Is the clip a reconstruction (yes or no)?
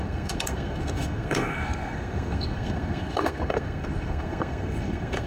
yes